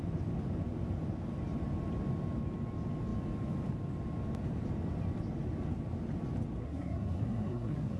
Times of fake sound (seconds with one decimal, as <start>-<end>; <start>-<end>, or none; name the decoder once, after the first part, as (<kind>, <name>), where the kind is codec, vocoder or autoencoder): 6.6-8.0 (codec, SNAC)